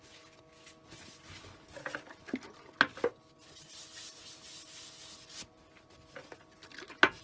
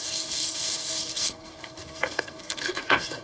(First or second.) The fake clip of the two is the second